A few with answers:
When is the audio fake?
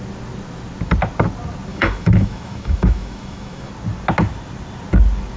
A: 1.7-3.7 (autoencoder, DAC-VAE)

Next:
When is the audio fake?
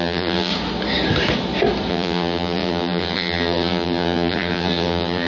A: 0.0-0.5 (vocoder, BigVGAN v2); 1.9-5.3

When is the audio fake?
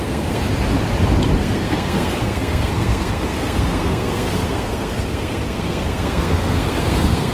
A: 0.0-0.4 (codec, SNAC); 1.4-7.3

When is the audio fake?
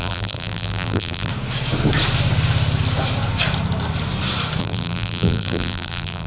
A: 0.0-1.3 (vocoder, BigVGAN v2); 4.6-6.3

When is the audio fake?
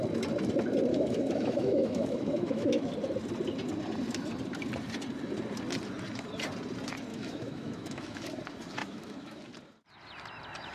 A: 0.9-2.9 (autoencoder, DAC-VAE); 7.1-8.4; 8.8-9.4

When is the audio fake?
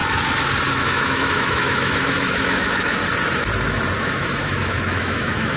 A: 0.7-3.0 (autoencoder, DAC-VAE); 4.0-5.6